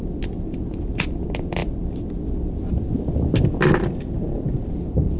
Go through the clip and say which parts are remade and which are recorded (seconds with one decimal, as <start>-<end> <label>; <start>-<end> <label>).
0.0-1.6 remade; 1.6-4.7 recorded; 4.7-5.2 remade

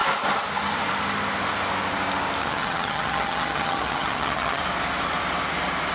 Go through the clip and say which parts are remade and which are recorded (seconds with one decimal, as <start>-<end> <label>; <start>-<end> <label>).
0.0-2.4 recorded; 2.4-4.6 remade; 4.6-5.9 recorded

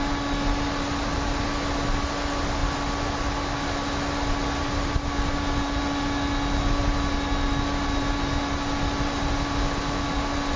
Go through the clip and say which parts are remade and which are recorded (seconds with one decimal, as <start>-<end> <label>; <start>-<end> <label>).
0.0-10.6 recorded